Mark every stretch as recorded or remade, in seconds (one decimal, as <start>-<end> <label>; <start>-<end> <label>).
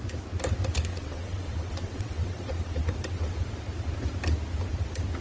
0.0-0.9 recorded; 0.9-3.4 remade; 3.4-5.2 recorded